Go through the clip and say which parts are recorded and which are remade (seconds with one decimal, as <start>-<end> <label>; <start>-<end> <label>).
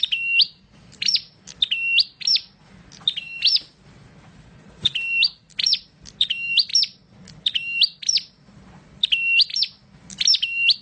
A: 0.0-10.8 recorded